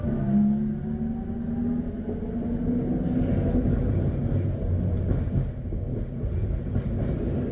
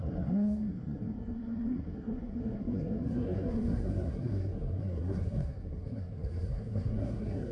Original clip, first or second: first